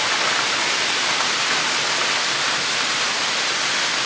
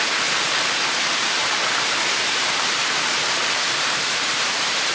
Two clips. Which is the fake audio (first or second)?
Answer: second